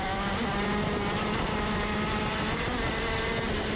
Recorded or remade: remade